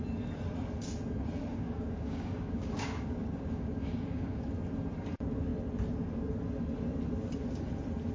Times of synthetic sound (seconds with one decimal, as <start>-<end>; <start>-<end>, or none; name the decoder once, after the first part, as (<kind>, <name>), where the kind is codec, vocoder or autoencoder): 1.5-4.5 (codec, DAC)

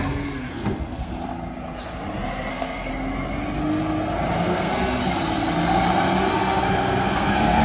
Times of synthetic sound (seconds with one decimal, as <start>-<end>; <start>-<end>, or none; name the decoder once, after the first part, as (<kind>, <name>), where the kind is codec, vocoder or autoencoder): 0.0-1.1 (codec, SNAC); 2.5-2.9; 4.3-5.0; 6.3-7.6

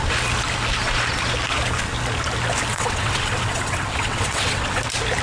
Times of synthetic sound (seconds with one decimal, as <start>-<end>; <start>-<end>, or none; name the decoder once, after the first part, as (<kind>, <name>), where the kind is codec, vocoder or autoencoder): 2.7-4.8 (vocoder, WaveNeXt)

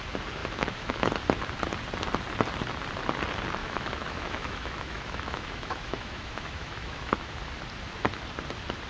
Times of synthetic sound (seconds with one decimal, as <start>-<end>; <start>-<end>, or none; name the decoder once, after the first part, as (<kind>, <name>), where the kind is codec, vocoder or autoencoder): 0.4-1.1 (autoencoder, DAC-VAE); 3.6-7.4

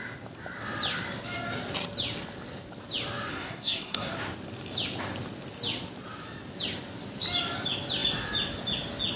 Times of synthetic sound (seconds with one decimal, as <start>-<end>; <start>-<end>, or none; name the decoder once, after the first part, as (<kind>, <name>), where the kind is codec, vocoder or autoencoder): 3.3-4.1 (codec, SNAC)

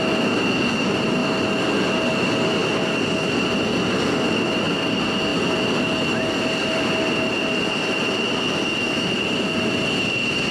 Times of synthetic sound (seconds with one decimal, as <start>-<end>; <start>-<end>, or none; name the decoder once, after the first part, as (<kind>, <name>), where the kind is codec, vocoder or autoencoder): none

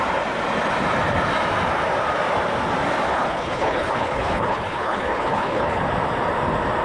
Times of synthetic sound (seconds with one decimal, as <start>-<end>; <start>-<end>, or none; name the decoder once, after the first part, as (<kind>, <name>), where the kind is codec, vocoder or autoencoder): 3.1-5.8 (codec, HILCodec)

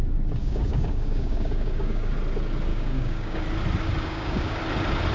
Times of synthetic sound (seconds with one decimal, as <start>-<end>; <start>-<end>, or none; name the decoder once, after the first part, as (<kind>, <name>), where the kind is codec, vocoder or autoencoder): 0.4-2.1 (codec, DAC); 2.7-3.4; 4.1-4.6